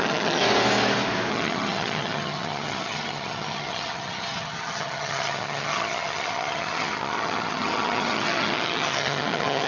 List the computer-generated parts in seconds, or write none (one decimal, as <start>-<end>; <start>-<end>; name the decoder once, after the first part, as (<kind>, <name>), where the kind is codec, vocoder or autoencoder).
0.0-0.4 (vocoder, HiFi-GAN); 1.3-9.7